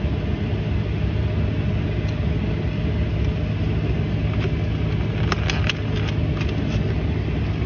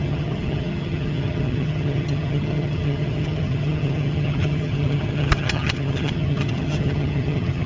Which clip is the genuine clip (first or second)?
first